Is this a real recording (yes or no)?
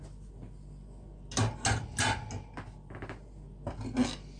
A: yes